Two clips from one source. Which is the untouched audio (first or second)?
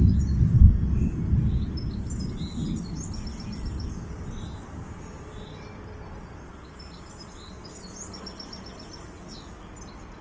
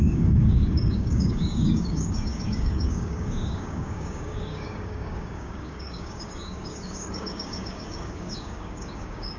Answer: first